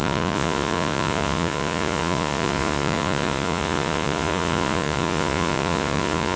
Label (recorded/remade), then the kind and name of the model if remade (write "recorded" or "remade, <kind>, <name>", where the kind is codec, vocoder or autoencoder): remade, vocoder, Vocos